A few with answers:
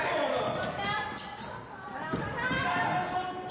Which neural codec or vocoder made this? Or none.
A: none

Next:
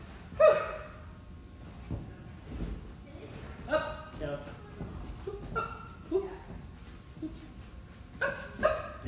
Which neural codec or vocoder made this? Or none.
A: none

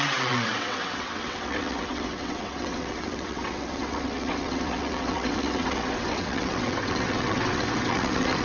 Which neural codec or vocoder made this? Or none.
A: vocoder, WaveNeXt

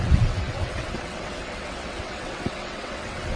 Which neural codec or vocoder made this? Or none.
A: vocoder, WaveNeXt